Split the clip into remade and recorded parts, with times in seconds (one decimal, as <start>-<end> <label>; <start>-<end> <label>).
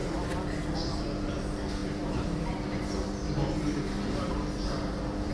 0.0-5.3 recorded